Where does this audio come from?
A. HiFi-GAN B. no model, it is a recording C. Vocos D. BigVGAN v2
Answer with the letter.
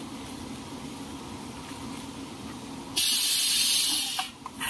B